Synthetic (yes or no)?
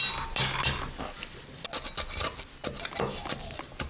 no